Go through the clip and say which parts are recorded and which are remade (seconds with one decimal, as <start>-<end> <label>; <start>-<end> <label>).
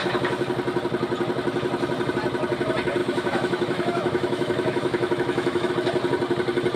0.0-3.0 recorded; 3.0-5.7 remade; 5.7-6.8 recorded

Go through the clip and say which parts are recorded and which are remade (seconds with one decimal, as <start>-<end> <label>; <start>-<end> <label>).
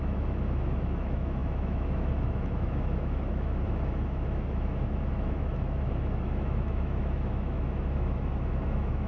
0.0-9.1 remade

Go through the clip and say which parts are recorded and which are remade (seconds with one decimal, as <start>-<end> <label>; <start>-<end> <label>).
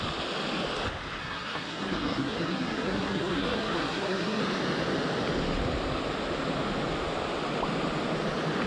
0.0-1.2 recorded; 1.2-4.4 remade; 4.4-8.7 recorded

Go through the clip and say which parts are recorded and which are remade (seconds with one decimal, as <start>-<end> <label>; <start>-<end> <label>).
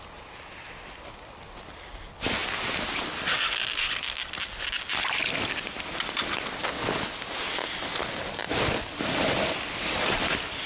0.0-10.7 recorded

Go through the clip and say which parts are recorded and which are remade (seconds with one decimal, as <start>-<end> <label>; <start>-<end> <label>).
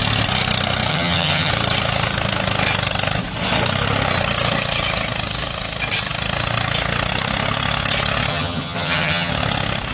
0.0-0.9 recorded; 0.9-1.5 remade; 1.5-8.3 recorded; 8.3-9.3 remade; 9.3-9.9 recorded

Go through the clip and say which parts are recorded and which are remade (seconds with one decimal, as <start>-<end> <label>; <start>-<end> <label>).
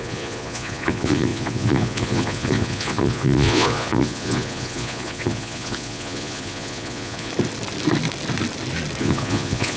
0.0-7.3 remade; 7.3-9.0 recorded; 9.0-9.8 remade